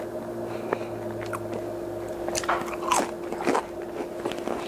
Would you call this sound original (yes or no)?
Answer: yes